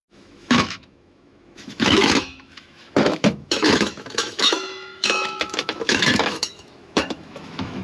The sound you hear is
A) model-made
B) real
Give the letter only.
A